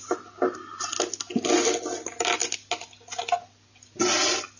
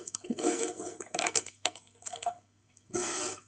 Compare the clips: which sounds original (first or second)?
first